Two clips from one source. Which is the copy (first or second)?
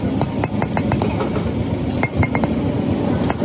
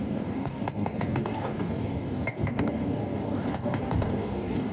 second